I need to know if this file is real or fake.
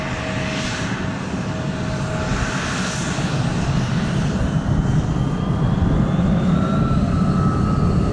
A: real